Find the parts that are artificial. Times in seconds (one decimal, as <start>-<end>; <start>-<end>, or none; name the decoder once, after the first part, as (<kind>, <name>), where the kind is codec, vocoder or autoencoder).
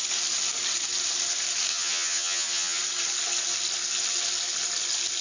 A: 1.7-2.8 (vocoder, HiFi-GAN)